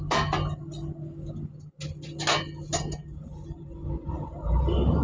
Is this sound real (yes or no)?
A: yes